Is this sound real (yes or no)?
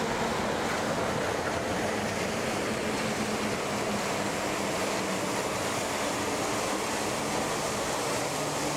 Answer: yes